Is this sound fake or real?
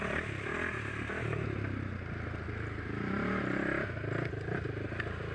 real